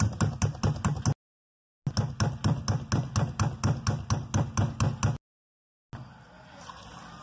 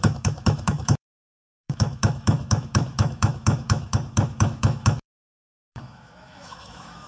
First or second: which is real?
first